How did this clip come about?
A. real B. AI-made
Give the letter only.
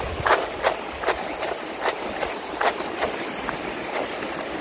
A